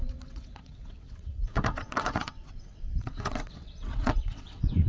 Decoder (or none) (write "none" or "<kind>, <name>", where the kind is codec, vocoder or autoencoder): vocoder, WaveNeXt